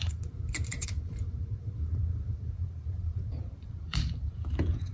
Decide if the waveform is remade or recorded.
remade